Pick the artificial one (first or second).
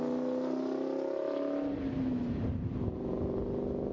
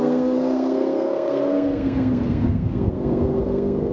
second